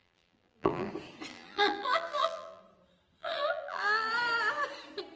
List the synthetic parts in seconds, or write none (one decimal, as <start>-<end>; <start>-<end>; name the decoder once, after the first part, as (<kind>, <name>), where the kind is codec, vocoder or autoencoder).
0.0-0.9 (vocoder, BigVGAN v2); 1.3-2.6; 3.2-4.1